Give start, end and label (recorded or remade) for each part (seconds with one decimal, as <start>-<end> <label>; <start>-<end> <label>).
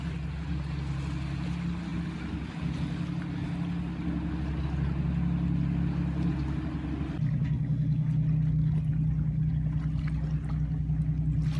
0.0-11.6 recorded